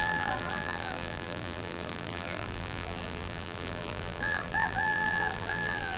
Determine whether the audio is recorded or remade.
remade